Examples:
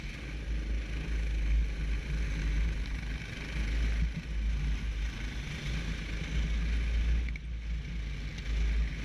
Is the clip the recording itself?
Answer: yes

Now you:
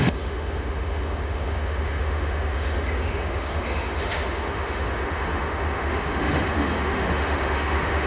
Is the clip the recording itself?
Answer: no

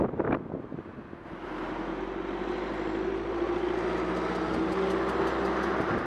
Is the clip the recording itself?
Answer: yes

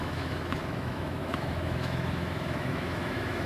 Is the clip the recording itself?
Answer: no